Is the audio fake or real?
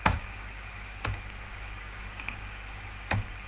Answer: fake